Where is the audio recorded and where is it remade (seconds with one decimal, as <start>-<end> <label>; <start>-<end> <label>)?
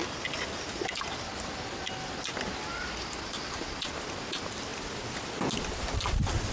0.0-6.5 recorded